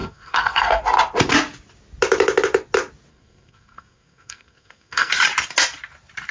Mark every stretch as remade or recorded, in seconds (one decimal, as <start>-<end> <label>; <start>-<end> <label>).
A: 0.0-0.8 remade; 0.8-3.1 recorded; 3.1-5.1 remade; 5.1-6.3 recorded